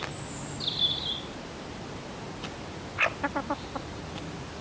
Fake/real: real